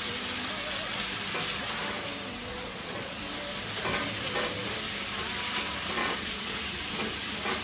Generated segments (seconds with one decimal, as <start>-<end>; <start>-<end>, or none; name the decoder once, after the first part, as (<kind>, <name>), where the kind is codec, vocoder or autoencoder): 2.5-3.2 (vocoder, Vocos); 6.0-6.6